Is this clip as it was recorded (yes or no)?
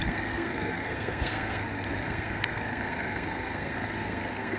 no